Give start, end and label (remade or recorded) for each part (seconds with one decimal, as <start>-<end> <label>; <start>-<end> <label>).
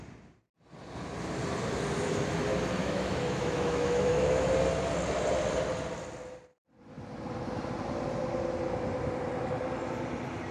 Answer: 0.0-2.8 recorded; 2.8-4.5 remade; 4.5-10.5 recorded